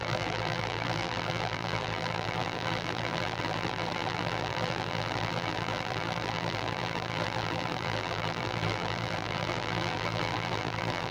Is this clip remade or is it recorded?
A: remade